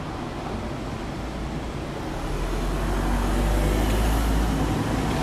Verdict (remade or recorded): recorded